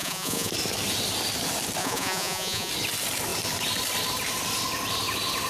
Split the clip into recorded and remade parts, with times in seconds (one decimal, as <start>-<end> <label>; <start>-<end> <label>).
0.0-0.5 remade; 0.5-1.8 recorded; 1.8-2.7 remade; 2.7-5.5 recorded